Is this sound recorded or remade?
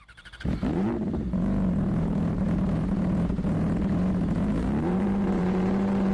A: remade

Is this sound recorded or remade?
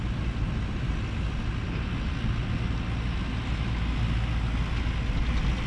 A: recorded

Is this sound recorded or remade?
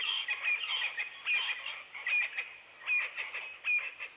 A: recorded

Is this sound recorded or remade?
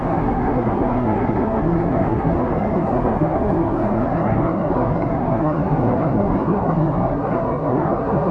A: remade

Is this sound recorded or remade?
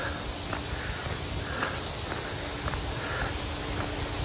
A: recorded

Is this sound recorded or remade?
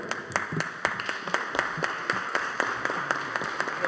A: recorded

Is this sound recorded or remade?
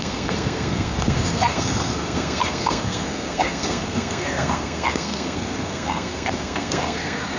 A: remade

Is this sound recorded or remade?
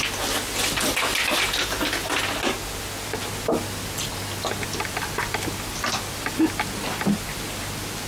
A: recorded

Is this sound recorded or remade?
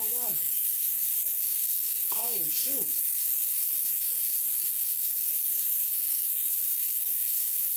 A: remade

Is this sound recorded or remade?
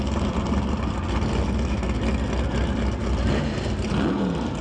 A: recorded